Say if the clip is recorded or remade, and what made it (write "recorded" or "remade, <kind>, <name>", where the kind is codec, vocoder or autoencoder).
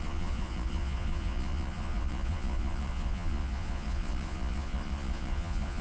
remade, vocoder, Vocos